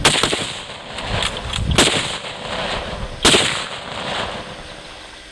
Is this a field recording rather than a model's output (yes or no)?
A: yes